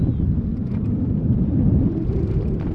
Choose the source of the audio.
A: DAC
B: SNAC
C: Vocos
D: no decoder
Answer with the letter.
D